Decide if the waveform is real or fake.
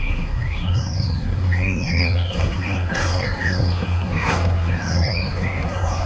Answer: fake